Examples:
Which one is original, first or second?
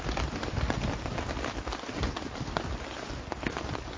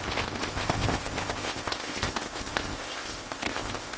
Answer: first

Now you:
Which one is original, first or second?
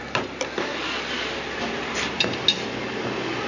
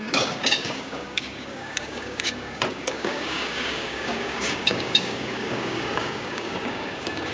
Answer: first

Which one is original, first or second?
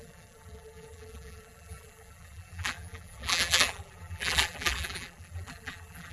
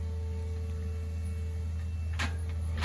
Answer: second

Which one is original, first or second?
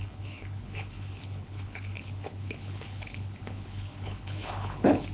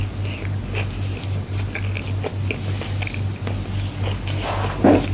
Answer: second